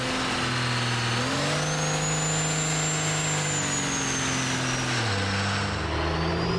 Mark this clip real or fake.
real